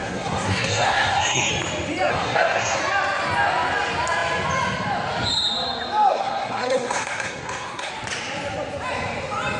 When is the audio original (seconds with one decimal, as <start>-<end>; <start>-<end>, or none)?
1.5-2.1; 2.8-6.1; 7.9-9.6